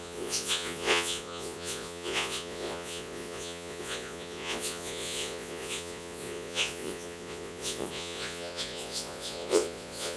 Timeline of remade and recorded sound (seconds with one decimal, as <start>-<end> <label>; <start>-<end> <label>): 0.0-10.2 remade